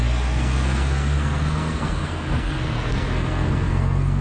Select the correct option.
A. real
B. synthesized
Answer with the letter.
B